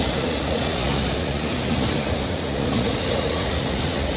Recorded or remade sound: remade